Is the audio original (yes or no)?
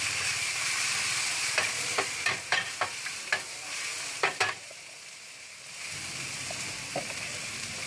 no